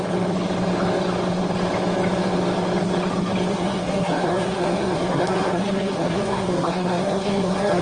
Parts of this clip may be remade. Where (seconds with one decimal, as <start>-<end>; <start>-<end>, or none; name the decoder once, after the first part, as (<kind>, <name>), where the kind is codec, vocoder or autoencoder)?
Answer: 3.5-7.8 (codec, SNAC)